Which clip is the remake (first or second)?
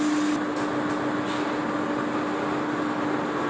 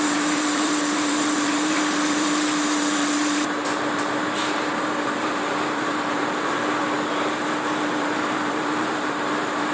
second